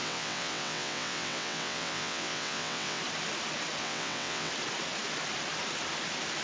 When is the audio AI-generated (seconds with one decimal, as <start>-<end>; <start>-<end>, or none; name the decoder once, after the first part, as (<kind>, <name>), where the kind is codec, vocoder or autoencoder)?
0.0-3.0 (vocoder, WaveNeXt); 3.8-4.5